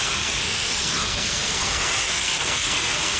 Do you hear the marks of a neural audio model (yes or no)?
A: yes